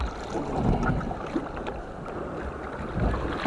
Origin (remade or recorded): recorded